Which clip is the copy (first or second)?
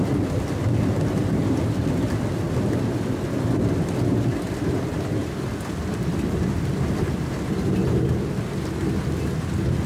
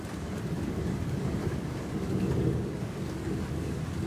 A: second